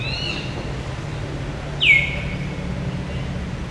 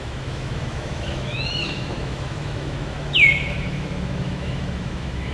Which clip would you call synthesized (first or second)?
second